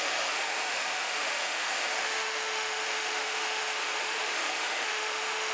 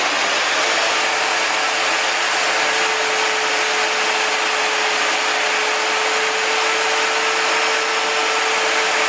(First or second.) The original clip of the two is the second